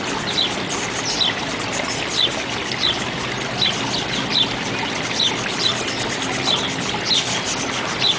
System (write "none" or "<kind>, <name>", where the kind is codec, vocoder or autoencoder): none